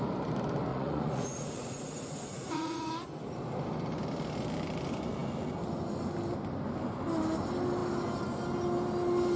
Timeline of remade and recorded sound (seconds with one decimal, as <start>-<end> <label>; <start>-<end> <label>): 0.0-0.7 recorded; 0.7-2.9 remade; 2.9-9.4 recorded